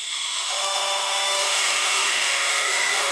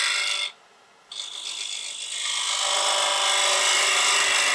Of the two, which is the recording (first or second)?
second